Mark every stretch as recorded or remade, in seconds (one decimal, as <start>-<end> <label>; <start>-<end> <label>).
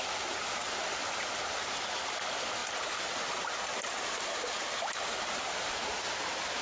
0.0-6.6 remade